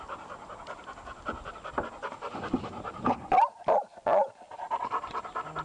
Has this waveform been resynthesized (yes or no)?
no